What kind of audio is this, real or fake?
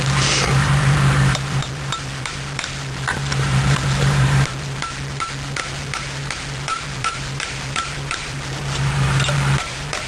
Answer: fake